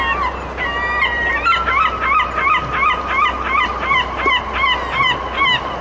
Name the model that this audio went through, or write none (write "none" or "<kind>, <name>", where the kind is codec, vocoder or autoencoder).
none